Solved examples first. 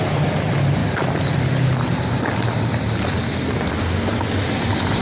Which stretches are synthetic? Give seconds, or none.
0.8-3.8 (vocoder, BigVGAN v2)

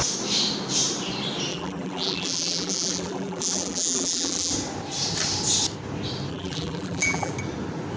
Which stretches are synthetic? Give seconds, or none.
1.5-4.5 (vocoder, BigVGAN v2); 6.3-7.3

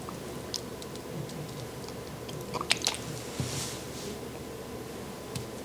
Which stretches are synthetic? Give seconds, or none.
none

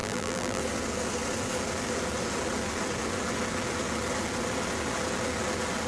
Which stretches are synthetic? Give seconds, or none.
0.0-0.6 (vocoder, BigVGAN v2)